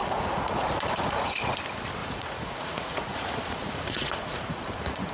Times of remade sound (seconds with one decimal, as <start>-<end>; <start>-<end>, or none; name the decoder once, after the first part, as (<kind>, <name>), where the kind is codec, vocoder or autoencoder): 0.0-1.3 (vocoder, Vocos); 2.0-5.1